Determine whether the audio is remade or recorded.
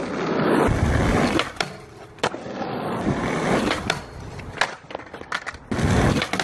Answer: recorded